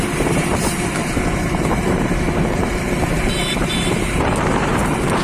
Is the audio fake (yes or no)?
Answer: yes